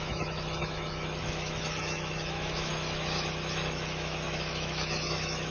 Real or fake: fake